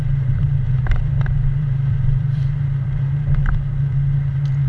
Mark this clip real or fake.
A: fake